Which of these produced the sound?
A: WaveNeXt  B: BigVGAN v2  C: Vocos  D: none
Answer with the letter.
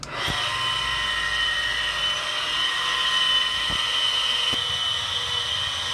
D